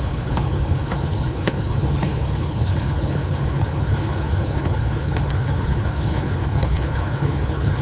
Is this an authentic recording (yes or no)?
no